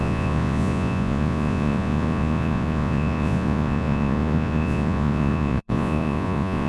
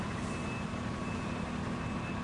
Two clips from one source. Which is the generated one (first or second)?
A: first